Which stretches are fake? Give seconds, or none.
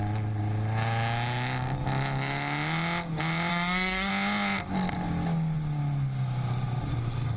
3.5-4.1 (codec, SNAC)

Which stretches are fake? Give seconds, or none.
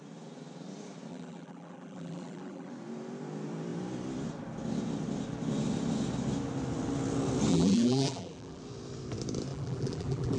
1.1-2.7 (vocoder, BigVGAN v2); 7.5-8.6; 9.5-10.4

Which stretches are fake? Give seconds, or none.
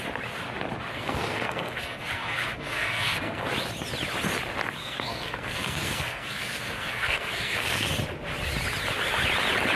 0.9-3.5 (codec, SNAC); 4.8-7.9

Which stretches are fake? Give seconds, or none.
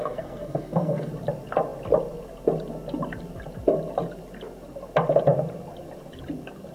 0.0-1.1 (codec, SNAC)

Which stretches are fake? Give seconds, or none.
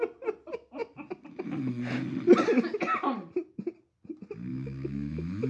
4.5-5.5 (autoencoder, DAC-VAE)